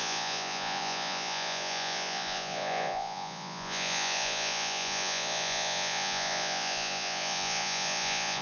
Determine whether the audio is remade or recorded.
remade